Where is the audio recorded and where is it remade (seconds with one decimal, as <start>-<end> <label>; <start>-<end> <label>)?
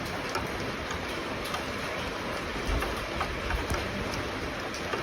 0.0-2.5 recorded; 2.5-3.0 remade; 3.0-5.0 recorded